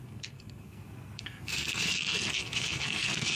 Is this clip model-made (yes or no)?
yes